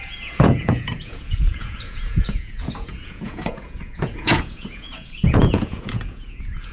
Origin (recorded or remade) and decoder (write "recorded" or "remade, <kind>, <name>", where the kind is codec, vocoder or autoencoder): remade, vocoder, Vocos